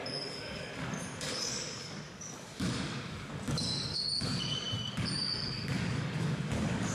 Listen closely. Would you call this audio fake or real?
fake